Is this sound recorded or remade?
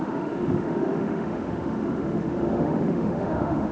remade